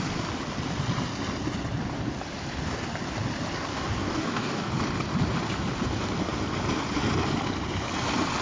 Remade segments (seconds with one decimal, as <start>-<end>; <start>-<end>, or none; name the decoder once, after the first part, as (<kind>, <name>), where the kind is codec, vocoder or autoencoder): 3.7-4.7 (codec, DAC)